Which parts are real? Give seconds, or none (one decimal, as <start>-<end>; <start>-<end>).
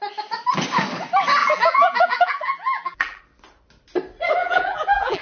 0.0-1.4; 3.2-4.4